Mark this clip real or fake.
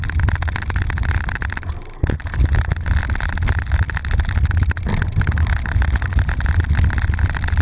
real